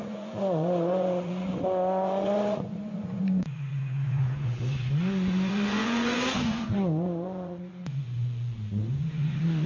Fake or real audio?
fake